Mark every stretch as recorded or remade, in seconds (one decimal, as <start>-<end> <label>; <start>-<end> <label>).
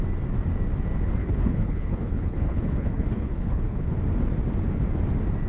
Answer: 0.0-1.2 recorded; 1.2-3.9 remade; 3.9-5.5 recorded